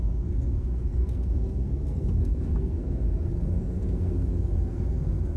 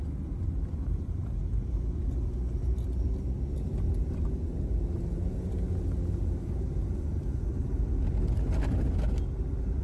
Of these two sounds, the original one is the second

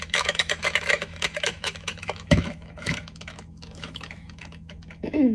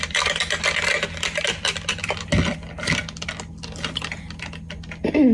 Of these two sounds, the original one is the second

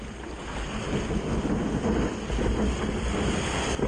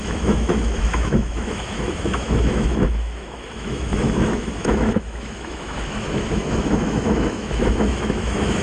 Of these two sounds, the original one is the first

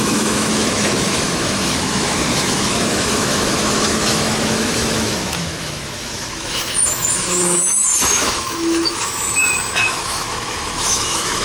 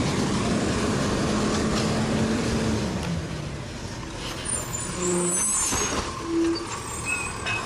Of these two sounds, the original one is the second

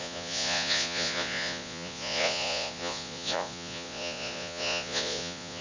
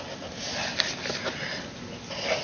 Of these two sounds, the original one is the second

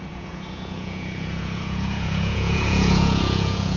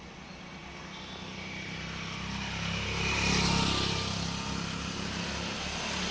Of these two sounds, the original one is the second